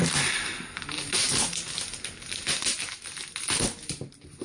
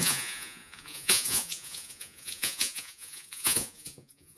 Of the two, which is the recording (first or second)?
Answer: first